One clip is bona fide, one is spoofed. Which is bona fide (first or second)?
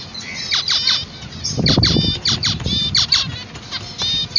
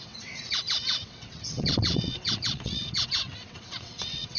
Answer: first